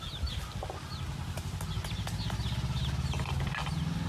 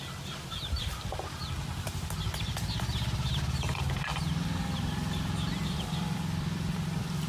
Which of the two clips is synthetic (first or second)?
second